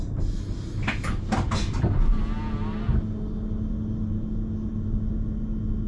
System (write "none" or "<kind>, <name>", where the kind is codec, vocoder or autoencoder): none